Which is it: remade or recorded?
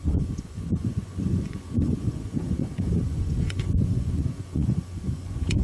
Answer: remade